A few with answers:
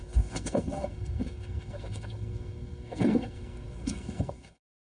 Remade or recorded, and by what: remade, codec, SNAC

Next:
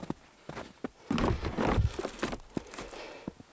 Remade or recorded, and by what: recorded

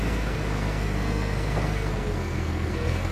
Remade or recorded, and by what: remade, codec, SNAC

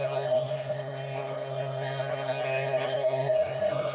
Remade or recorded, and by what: remade, codec, SNAC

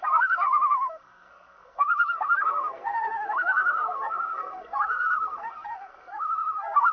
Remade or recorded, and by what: remade, codec, SNAC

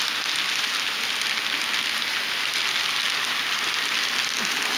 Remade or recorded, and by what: recorded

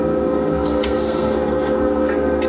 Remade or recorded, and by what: remade, codec, SNAC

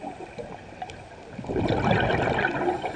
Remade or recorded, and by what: recorded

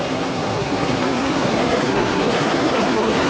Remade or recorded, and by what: remade, codec, SNAC